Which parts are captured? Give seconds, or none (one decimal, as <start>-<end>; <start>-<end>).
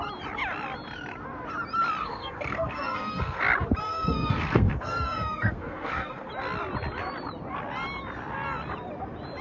0.0-2.0; 3.4-3.8; 6.3-9.4